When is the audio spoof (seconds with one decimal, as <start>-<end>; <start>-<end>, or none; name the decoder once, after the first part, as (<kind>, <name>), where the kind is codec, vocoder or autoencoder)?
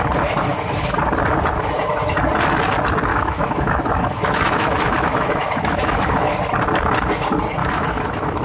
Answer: 3.1-6.3 (autoencoder, DAC-VAE); 7.6-8.4